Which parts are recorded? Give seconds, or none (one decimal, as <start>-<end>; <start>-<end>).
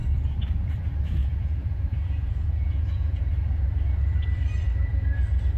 0.0-1.2; 3.3-5.6